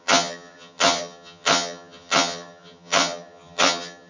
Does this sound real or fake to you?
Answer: fake